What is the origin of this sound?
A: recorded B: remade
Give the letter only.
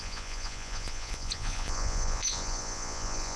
B